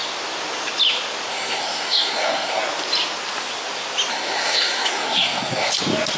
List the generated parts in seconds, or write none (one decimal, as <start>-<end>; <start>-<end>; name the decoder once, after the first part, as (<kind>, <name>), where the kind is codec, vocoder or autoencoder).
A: 1.3-2.6 (codec, SNAC); 4.1-5.7